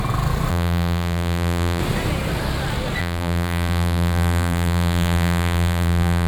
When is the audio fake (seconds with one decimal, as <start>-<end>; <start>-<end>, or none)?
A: 0.5-1.8; 3.0-6.3